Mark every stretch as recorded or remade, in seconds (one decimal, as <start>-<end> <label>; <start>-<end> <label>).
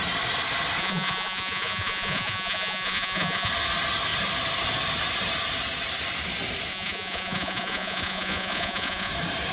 0.0-0.8 recorded; 0.8-3.5 remade; 3.5-6.7 recorded; 6.7-9.1 remade; 9.1-9.5 recorded